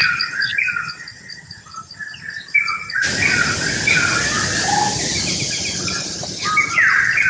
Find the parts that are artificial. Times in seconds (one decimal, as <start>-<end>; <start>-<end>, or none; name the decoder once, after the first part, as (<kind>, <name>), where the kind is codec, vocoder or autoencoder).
none